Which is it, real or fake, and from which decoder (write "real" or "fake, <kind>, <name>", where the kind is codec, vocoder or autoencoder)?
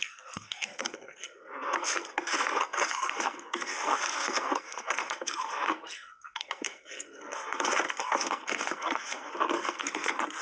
fake, codec, SNAC